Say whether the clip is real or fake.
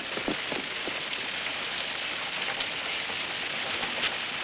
real